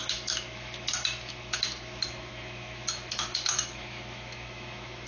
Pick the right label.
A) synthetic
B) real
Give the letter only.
A